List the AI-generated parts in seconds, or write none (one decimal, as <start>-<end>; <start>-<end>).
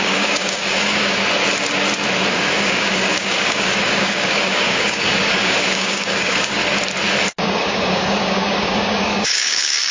0.0-1.2; 2.3-6.6; 7.4-9.9